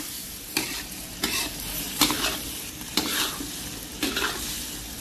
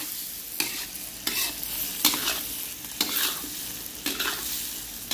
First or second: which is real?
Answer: second